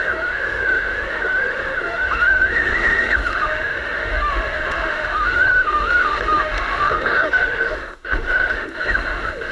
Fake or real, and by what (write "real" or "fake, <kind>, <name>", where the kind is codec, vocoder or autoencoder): fake, autoencoder, DAC-VAE